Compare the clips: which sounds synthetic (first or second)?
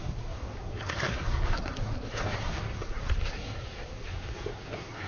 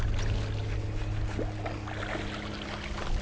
first